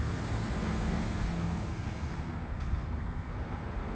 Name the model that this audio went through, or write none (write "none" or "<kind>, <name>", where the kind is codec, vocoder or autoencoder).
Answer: codec, SNAC